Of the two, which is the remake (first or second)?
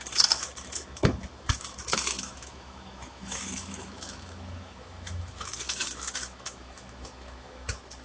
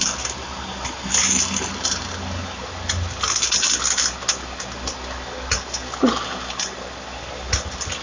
first